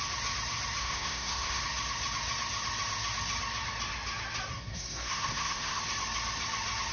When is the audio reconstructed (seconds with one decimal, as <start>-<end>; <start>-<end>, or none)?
0.8-1.6; 4.5-5.8